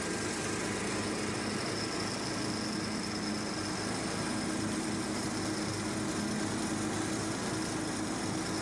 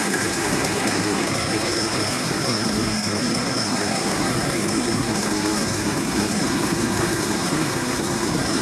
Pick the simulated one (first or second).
second